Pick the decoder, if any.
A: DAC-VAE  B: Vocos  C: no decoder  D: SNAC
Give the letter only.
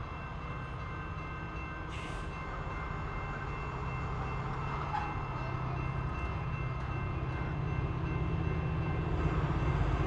C